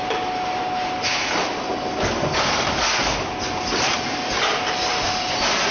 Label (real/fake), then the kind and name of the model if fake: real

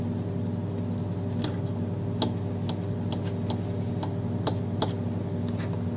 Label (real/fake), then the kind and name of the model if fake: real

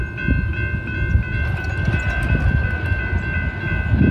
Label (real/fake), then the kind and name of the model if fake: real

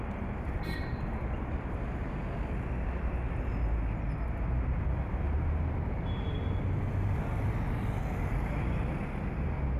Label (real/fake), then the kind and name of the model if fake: real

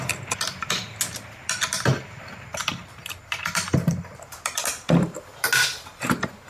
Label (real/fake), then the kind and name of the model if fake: real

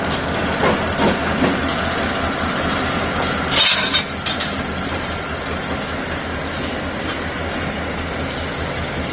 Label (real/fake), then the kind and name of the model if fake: real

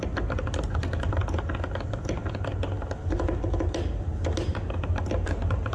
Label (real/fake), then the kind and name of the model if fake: real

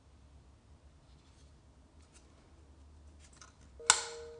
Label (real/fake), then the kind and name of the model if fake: real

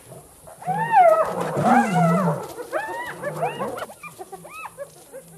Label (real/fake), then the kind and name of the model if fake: real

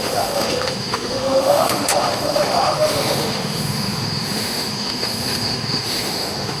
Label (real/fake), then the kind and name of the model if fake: fake, autoencoder, DAC-VAE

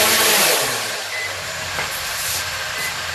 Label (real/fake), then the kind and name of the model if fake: fake, vocoder, BigVGAN v2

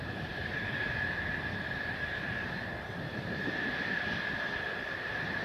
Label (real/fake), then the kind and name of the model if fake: fake, vocoder, BigVGAN v2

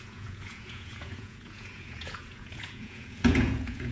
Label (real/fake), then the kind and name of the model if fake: fake, vocoder, Vocos